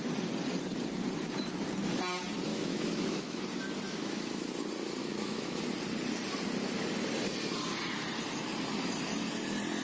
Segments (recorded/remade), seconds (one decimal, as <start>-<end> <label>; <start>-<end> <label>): 0.0-2.5 recorded; 2.5-3.4 remade; 3.4-3.9 recorded; 3.9-4.5 remade; 4.5-5.0 recorded; 5.0-5.6 remade; 5.6-9.8 recorded